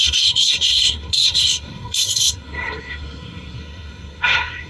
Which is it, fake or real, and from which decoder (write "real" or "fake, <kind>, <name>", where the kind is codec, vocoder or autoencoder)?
fake, codec, SNAC